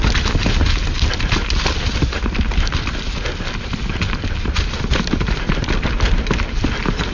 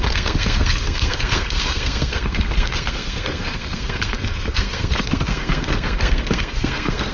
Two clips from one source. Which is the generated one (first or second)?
second